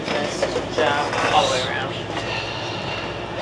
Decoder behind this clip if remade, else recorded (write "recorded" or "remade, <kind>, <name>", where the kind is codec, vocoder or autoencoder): recorded